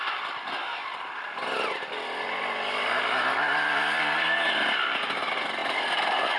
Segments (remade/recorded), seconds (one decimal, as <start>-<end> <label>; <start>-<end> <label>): 0.0-6.4 recorded